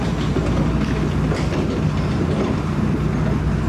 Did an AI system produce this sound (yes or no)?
no